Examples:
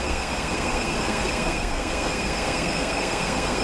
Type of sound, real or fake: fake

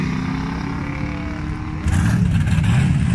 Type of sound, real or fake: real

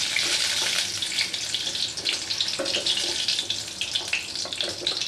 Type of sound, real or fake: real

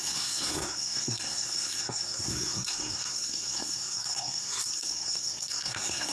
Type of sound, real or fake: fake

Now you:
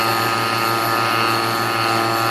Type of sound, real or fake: real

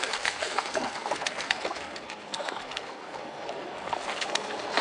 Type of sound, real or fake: fake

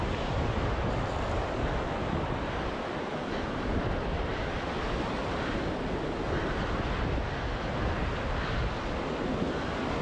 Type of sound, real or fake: real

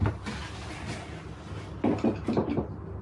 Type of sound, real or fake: real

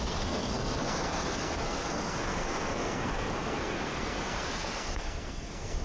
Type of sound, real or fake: fake